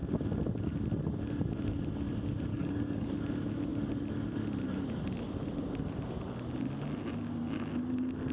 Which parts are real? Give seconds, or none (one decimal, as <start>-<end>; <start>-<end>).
0.0-2.5; 3.1-8.3